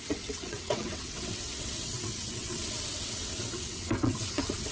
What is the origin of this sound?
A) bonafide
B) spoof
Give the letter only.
B